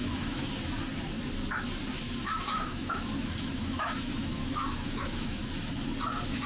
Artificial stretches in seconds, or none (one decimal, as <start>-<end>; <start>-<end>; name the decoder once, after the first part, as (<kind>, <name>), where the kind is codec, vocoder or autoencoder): 0.0-0.5 (autoencoder, DAC-VAE); 2.2-5.4